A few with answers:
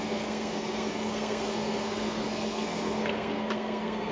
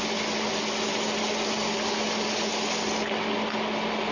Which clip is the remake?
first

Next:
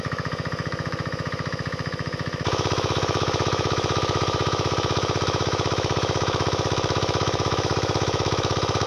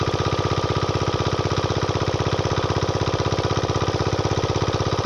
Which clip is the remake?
first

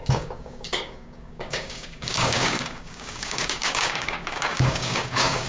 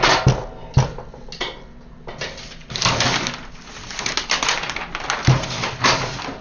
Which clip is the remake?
first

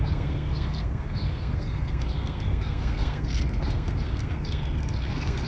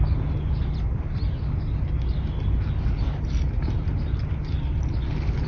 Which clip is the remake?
first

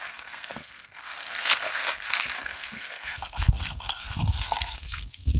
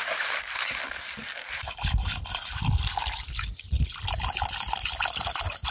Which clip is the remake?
first